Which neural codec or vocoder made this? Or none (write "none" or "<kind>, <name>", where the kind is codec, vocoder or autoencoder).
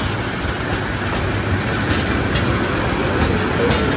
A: none